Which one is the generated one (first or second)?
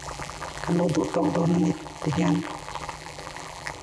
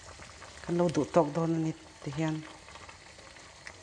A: first